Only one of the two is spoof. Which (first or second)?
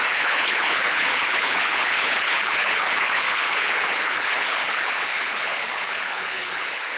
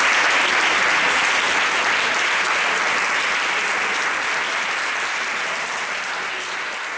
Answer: first